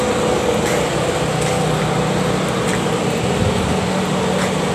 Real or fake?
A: real